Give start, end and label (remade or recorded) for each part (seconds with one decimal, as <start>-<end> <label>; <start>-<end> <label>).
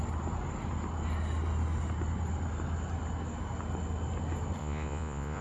0.0-4.6 recorded; 4.6-5.4 remade